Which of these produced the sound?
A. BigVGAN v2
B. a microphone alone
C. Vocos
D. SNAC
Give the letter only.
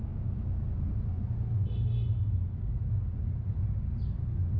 B